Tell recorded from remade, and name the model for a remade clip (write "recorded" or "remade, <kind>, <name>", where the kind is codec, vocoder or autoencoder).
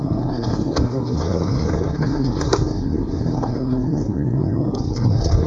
remade, codec, SNAC